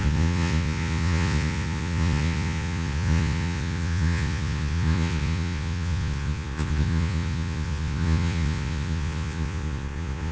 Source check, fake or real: fake